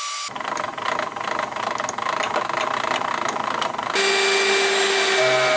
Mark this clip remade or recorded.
recorded